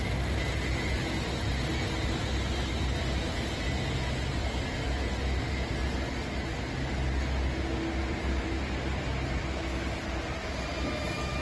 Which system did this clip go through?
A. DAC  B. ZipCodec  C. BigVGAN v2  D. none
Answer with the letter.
D